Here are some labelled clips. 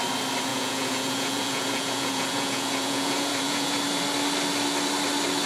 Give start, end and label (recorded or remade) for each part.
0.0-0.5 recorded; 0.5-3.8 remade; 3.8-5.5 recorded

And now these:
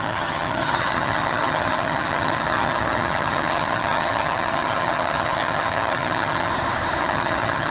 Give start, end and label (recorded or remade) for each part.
0.0-6.5 remade; 6.5-7.0 recorded; 7.0-7.7 remade

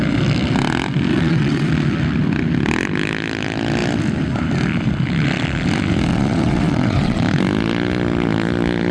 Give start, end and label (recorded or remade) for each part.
0.0-1.1 recorded; 1.1-1.7 remade; 1.7-6.1 recorded; 6.1-7.2 remade; 7.2-8.9 recorded

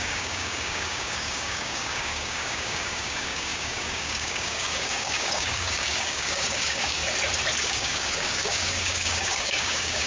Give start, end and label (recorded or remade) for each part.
0.0-7.0 remade; 7.0-7.6 recorded; 7.6-10.1 remade

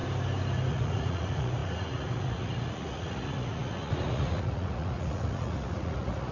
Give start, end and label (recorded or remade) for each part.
0.0-0.7 recorded; 0.7-6.3 remade

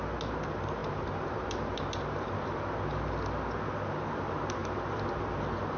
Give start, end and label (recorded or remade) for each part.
0.0-0.8 recorded; 0.8-2.3 remade; 2.3-4.6 recorded; 4.6-5.1 remade; 5.1-5.8 recorded